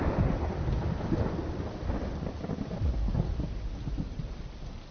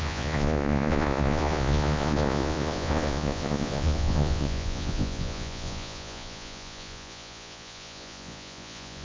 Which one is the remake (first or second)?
second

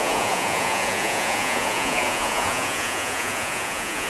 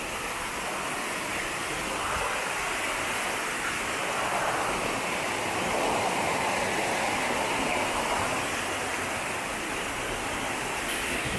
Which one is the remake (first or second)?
first